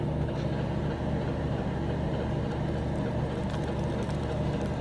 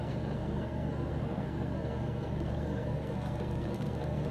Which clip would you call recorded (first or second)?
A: first